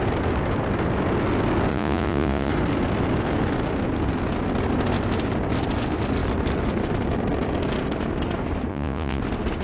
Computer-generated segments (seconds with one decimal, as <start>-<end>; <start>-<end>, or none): 1.7-2.5; 8.7-9.2